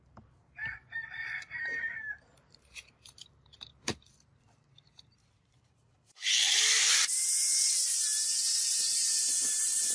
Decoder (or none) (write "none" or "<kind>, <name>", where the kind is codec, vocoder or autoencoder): vocoder, BigVGAN v2